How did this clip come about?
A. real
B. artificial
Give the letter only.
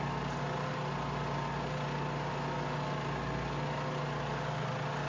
A